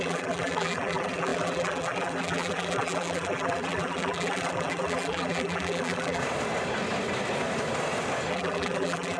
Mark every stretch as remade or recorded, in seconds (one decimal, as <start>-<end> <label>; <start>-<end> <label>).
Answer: 0.0-6.2 remade; 6.2-8.3 recorded; 8.3-9.2 remade

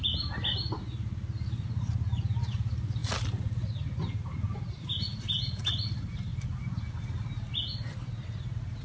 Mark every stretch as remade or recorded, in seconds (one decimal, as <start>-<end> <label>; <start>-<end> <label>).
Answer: 0.0-8.8 recorded

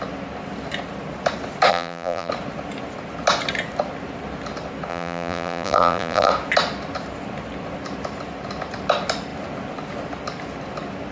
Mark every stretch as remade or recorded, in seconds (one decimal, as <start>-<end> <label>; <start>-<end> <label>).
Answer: 0.0-1.7 recorded; 1.7-2.3 remade; 2.3-4.9 recorded; 4.9-6.3 remade; 6.3-11.1 recorded

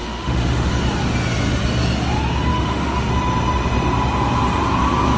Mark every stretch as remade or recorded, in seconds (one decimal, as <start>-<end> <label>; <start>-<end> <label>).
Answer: 0.0-0.7 remade; 0.7-2.5 recorded; 2.5-3.1 remade; 3.1-5.2 recorded

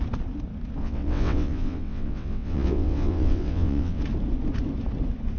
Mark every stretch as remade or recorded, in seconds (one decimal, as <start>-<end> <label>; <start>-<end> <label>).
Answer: 0.0-0.8 recorded; 0.8-4.0 remade; 4.0-5.4 recorded

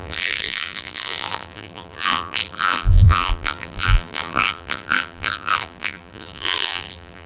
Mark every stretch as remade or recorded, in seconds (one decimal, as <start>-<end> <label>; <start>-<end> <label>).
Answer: 0.0-7.3 remade

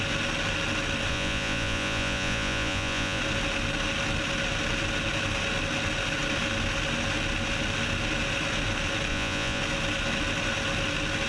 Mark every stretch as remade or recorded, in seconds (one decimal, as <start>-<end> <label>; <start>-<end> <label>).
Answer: 0.0-1.1 recorded; 1.1-3.2 remade; 3.2-9.1 recorded; 9.1-9.6 remade; 9.6-11.3 recorded